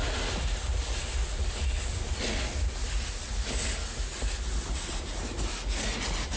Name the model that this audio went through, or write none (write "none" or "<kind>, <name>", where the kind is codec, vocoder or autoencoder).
none